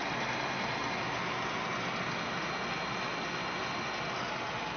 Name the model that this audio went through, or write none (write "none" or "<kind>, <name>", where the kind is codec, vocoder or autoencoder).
none